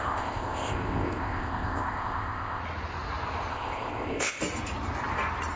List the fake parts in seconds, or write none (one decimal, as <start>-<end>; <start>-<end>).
0.0-2.6; 3.5-4.4